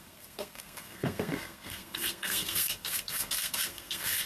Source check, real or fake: fake